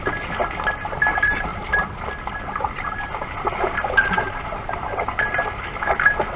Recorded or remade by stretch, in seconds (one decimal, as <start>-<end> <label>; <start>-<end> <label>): 0.0-1.5 recorded; 1.5-2.1 remade; 2.1-6.4 recorded